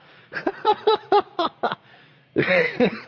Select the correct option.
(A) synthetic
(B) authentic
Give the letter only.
A